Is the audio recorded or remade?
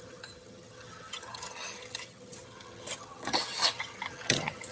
remade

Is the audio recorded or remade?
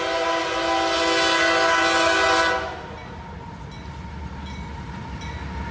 recorded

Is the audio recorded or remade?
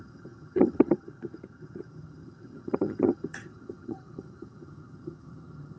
remade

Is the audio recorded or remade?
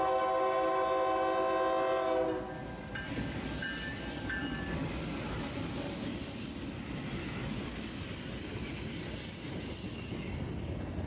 recorded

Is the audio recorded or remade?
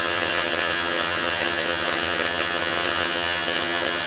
remade